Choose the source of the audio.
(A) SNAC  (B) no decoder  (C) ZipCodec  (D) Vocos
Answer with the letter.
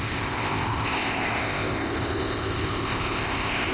C